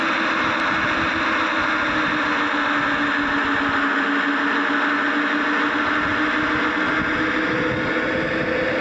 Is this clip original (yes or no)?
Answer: yes